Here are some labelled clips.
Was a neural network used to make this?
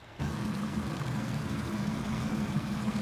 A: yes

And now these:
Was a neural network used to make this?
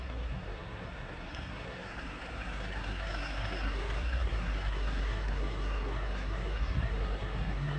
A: yes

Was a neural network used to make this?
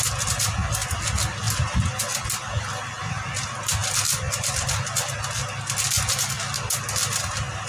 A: no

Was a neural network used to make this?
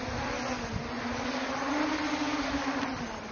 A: no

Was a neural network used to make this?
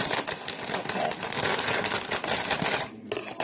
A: no